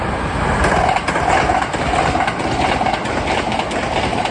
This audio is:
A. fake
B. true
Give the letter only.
B